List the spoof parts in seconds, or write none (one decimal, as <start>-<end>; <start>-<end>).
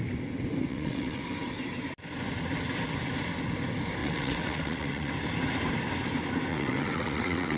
0.7-1.2; 4.0-5.1; 6.5-7.6